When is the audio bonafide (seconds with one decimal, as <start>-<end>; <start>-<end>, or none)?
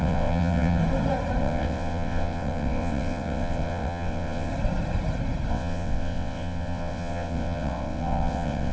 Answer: 0.8-1.4; 4.5-5.5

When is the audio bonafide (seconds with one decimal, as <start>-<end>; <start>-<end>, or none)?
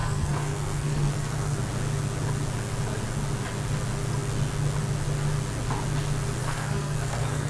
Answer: 1.6-6.4